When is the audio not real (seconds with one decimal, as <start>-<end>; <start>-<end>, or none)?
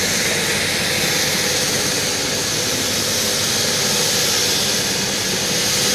none